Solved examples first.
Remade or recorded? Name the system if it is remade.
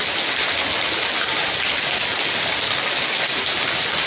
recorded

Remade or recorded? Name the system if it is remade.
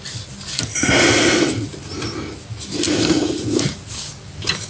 recorded